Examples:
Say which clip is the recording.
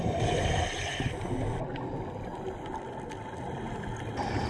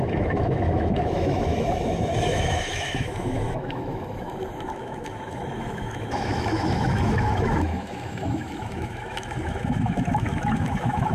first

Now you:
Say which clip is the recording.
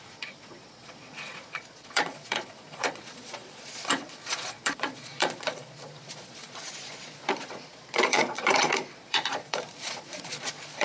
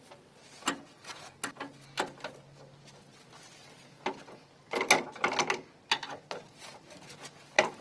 second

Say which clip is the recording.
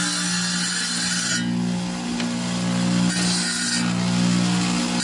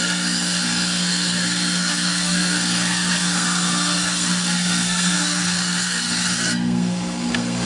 first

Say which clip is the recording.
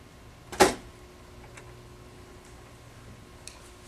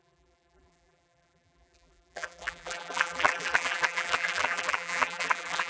first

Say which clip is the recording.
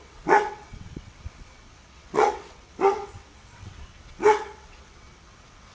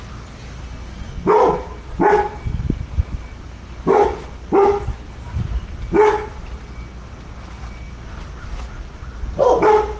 second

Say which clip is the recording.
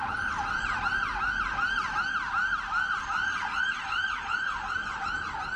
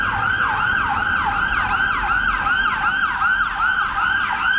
first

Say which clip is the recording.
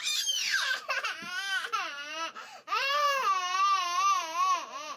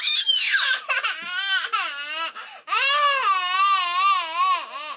second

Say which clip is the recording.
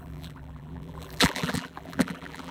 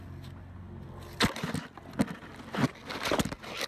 second